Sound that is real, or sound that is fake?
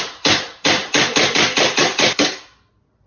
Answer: real